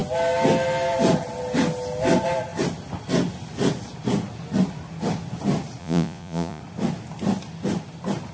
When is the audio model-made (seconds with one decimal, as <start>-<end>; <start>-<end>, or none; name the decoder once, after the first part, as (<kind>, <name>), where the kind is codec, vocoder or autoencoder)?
5.8-6.6 (vocoder, Vocos)